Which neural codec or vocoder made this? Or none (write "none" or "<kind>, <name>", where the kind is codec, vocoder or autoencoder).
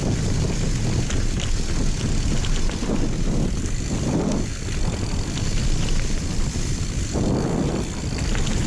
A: none